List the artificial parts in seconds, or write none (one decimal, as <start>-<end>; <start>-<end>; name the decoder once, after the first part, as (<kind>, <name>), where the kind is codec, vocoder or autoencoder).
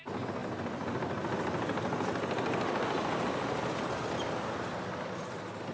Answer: none